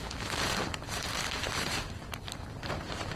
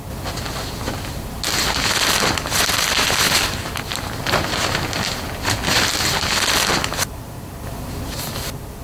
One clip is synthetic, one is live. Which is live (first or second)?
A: second